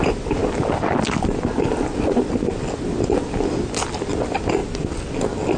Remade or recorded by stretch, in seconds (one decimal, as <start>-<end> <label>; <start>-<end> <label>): 0.0-5.6 recorded